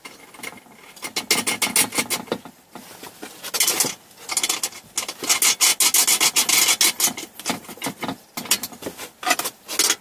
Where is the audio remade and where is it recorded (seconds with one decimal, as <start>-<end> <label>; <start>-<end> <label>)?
0.0-10.0 recorded